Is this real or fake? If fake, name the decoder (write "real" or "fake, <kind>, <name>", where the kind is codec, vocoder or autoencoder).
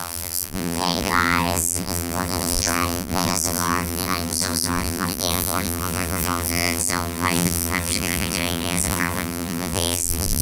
fake, vocoder, BigVGAN v2